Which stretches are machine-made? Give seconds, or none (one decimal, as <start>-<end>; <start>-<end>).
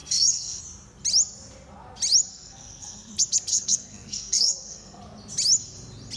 0.0-0.6; 2.3-3.1; 3.5-5.0